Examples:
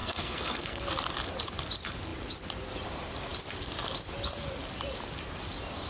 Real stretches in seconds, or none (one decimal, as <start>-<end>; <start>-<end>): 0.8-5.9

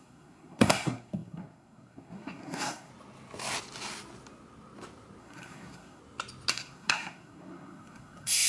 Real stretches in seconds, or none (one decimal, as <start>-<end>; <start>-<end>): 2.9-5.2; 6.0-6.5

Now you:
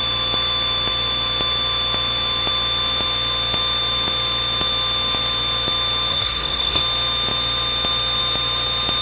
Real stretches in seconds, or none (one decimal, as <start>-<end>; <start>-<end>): 0.0-6.1; 6.8-9.0